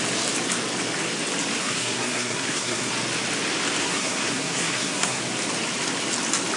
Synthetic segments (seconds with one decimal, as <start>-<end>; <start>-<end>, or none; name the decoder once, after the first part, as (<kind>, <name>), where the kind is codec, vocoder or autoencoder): 1.6-2.9 (codec, SNAC); 3.8-5.2